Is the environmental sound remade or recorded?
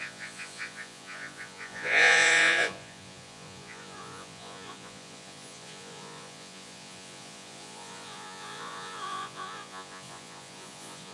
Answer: remade